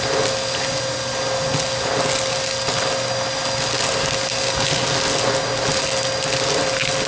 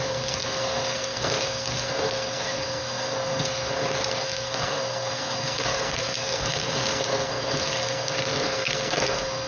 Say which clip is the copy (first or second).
second